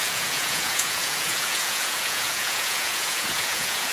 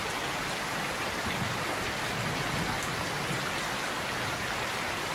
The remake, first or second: first